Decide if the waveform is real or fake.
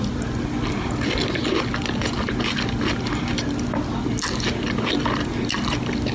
real